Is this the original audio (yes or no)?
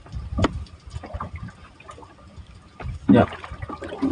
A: yes